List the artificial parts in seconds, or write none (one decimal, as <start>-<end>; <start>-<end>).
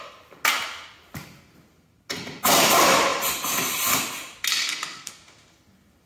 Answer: 4.6-5.1